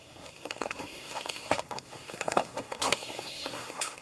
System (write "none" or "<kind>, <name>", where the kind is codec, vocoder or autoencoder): codec, SNAC